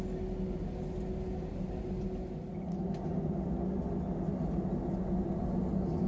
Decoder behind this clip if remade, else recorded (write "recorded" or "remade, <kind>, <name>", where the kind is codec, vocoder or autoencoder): recorded